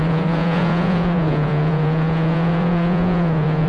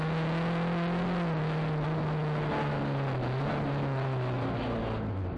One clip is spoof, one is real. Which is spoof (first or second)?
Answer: first